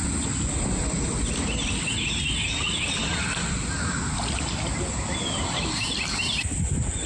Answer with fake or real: real